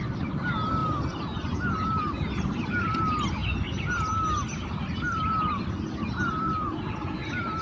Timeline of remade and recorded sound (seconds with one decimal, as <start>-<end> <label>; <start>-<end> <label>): 0.0-7.6 recorded